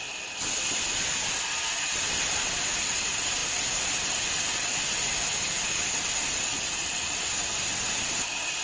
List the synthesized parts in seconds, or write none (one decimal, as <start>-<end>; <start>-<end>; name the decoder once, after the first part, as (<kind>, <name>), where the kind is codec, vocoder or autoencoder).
none